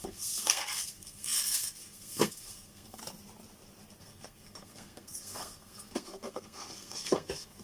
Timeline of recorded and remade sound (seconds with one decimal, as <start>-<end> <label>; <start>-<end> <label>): 0.0-3.0 remade; 3.0-4.0 recorded; 4.0-7.6 remade